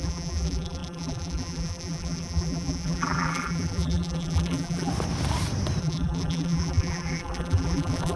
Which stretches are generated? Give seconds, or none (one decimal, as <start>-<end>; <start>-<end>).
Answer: 0.0-4.9; 5.8-8.2